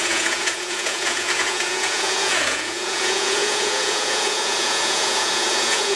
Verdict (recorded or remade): remade